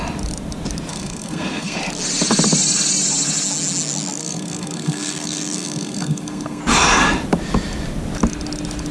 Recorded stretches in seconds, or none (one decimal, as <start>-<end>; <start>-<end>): 0.0-0.9; 1.8-4.2; 6.6-8.9